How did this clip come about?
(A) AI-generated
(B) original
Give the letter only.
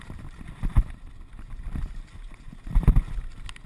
B